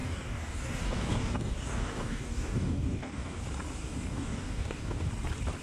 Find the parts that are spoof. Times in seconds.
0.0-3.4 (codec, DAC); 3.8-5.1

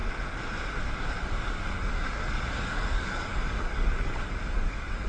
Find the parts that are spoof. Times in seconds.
0.8-5.1 (codec, DAC)

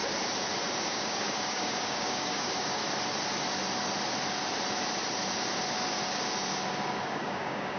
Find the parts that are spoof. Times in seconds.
0.9-2.8 (codec, DAC); 7.0-7.8

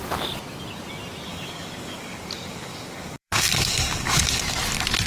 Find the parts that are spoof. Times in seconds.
1.3-4.4 (codec, DAC)

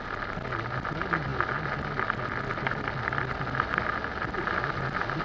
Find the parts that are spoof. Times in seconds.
none

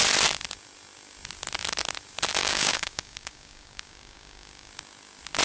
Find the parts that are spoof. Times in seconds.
2.4-4.7 (codec, DAC)

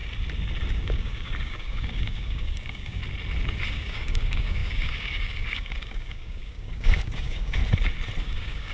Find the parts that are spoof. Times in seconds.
0.7-3.0 (codec, DAC); 3.7-7.6; 8.2-8.7